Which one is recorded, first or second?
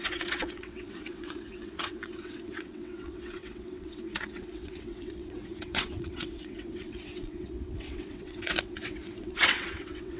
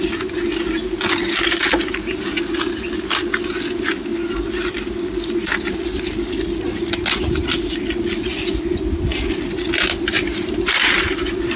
second